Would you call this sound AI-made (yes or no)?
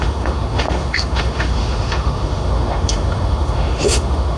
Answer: yes